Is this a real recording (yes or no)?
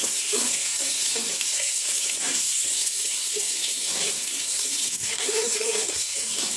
no